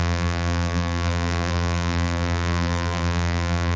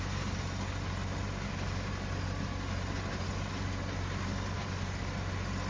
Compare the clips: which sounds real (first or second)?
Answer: second